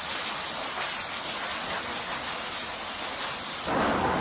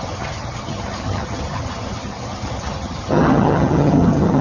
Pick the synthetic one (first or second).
second